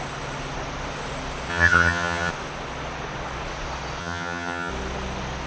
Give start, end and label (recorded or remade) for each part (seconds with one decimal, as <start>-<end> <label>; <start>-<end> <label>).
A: 0.0-1.5 recorded; 1.5-2.3 remade; 2.3-4.0 recorded; 4.0-4.7 remade; 4.7-5.5 recorded